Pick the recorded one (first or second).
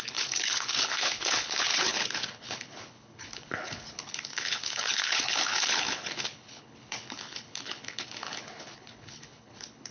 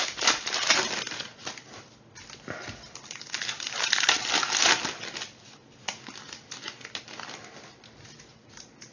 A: second